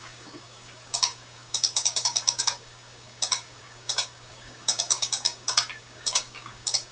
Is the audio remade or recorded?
remade